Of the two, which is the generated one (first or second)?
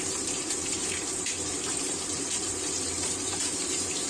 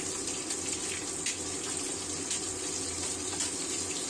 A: first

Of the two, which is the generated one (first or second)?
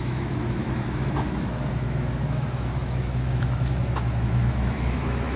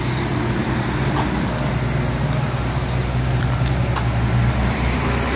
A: first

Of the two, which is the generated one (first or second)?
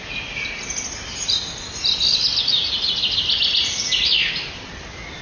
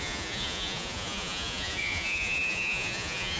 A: second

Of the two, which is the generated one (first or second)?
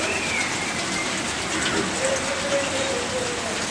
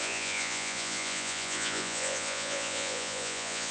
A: second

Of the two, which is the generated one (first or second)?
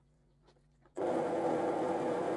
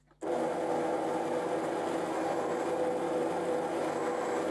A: first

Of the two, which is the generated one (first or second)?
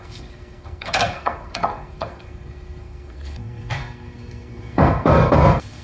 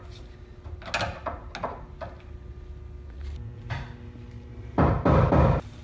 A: first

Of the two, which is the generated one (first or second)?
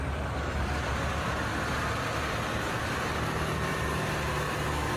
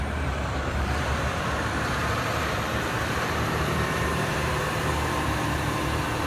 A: second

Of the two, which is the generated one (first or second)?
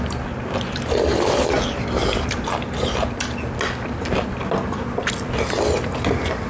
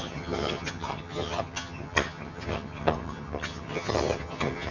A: second